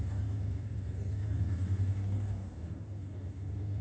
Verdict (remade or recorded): remade